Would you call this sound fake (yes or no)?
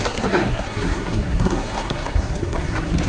yes